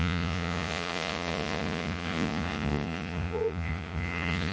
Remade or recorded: remade